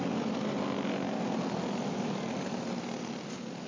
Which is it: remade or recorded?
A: recorded